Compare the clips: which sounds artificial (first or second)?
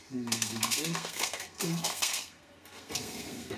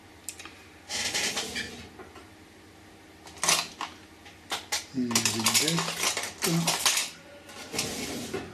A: first